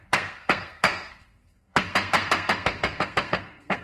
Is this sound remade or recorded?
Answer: remade